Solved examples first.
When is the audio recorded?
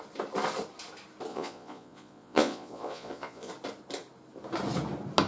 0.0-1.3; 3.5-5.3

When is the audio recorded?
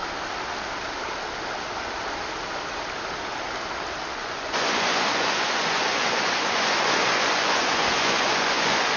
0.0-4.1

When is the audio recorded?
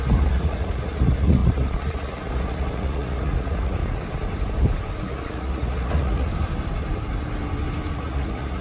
3.8-5.0; 6.3-7.9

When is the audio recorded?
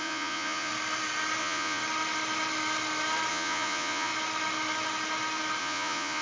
0.7-1.4; 1.8-3.3; 4.1-5.6